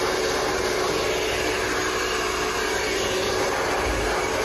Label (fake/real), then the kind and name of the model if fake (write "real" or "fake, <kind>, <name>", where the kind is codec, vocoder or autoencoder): real